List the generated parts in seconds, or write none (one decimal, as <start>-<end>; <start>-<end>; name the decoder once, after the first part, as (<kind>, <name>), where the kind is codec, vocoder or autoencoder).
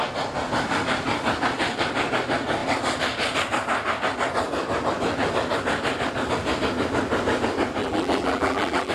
7.8-8.9 (vocoder, BigVGAN v2)